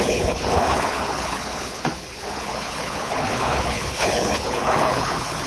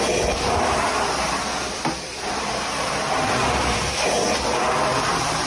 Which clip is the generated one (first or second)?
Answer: first